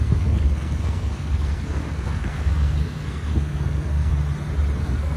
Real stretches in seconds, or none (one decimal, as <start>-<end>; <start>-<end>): 4.1-4.8